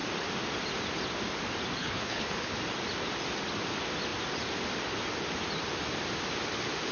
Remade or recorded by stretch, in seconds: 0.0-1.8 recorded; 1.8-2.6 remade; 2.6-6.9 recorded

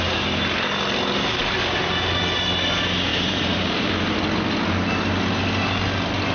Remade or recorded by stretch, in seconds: 0.0-3.1 recorded; 3.1-3.9 remade; 3.9-6.3 recorded

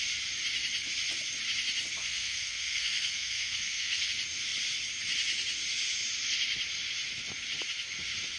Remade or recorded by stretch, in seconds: 0.0-2.0 recorded; 2.0-4.1 remade; 4.1-8.4 recorded